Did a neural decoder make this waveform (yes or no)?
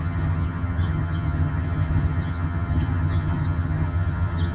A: yes